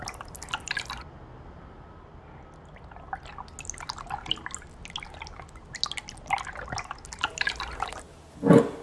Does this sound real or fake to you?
real